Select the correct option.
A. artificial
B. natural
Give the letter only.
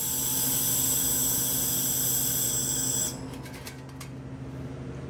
B